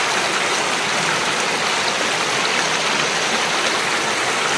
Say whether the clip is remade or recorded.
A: recorded